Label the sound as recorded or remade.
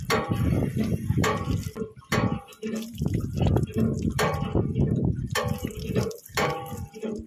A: remade